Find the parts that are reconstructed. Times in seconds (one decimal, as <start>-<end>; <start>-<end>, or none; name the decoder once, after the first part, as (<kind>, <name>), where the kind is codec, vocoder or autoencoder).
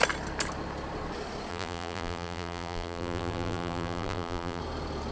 1.5-4.6 (vocoder, BigVGAN v2)